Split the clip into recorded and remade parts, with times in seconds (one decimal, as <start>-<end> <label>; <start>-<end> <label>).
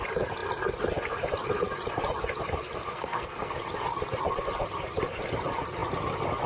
0.0-2.9 recorded; 2.9-3.5 remade; 3.5-6.5 recorded